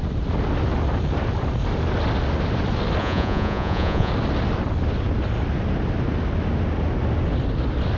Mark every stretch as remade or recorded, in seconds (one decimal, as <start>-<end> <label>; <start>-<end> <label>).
0.0-3.0 recorded; 3.0-4.1 remade; 4.1-8.0 recorded